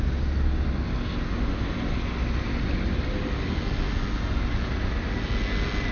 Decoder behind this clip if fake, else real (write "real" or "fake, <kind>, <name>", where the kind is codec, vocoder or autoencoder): real